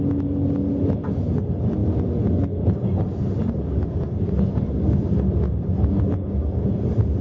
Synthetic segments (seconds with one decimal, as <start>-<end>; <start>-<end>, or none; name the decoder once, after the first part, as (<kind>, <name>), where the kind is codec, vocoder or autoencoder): none

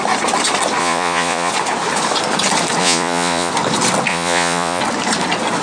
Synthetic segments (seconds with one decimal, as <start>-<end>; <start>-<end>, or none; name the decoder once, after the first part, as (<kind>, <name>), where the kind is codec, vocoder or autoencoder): 0.8-1.5 (vocoder, Vocos); 2.8-3.5; 4.1-4.8